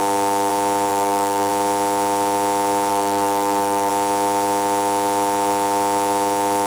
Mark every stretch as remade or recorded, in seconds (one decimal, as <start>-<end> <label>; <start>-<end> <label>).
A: 0.0-0.9 recorded; 0.9-1.5 remade; 1.5-2.9 recorded; 2.9-3.9 remade; 3.9-6.7 recorded